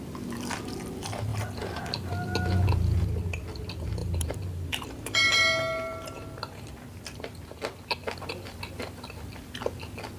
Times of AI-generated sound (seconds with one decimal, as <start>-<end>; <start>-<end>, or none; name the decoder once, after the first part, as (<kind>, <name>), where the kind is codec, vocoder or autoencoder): 1.3-2.1 (vocoder, BigVGAN v2); 4.0-6.9